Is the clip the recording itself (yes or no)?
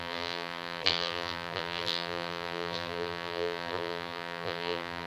no